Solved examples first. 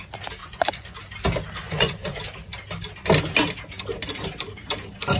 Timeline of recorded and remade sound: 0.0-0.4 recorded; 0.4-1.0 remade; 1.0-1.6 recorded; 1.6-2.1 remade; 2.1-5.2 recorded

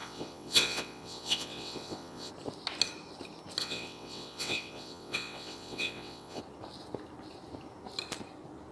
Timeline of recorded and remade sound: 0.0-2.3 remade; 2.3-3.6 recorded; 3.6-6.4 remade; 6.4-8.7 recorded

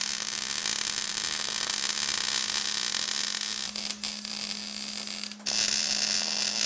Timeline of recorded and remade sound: 0.0-6.7 recorded